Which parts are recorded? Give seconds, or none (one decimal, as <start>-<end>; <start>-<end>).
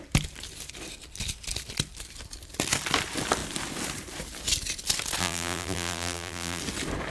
0.0-5.2; 6.6-7.1